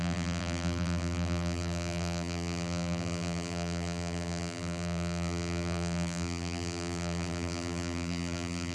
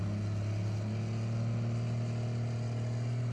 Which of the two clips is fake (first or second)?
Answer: first